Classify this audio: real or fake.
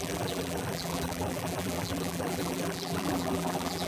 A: fake